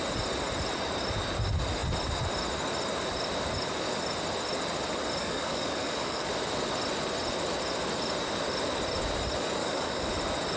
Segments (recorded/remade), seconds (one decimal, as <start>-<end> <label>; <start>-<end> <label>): 0.0-5.2 recorded; 5.2-6.3 remade; 6.3-9.6 recorded; 9.6-10.1 remade; 10.1-10.6 recorded